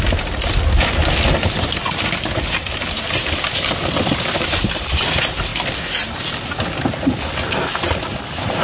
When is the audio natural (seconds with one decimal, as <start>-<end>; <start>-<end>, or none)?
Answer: 0.0-8.6